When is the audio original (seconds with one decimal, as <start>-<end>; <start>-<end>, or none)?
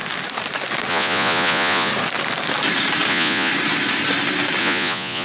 0.0-0.9; 1.9-3.1; 3.5-4.6